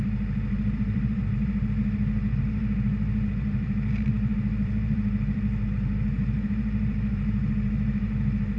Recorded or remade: remade